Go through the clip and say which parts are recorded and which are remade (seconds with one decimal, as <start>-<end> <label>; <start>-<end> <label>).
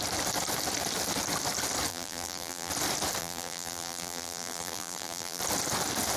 0.0-1.9 recorded; 1.9-2.7 remade; 2.7-3.2 recorded; 3.2-5.4 remade; 5.4-6.2 recorded